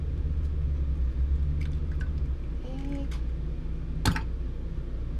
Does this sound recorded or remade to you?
recorded